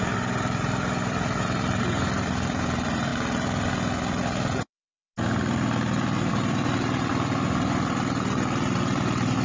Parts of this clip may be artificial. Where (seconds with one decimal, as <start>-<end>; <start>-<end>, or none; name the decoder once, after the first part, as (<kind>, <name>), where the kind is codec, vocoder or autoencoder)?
0.0-3.1 (vocoder, BigVGAN v2); 6.3-7.1; 8.7-9.4